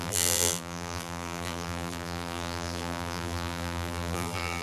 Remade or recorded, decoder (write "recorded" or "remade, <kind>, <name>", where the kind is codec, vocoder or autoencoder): remade, vocoder, BigVGAN v2